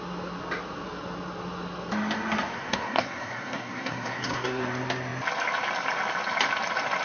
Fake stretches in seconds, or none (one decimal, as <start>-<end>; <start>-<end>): 2.5-4.6